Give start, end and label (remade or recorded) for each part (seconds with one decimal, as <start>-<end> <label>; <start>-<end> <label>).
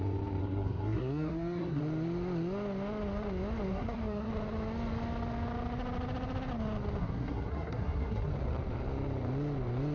0.0-0.4 recorded; 0.4-1.8 remade; 1.8-3.7 recorded; 3.7-4.3 remade; 4.3-7.0 recorded; 7.0-8.3 remade; 8.3-9.9 recorded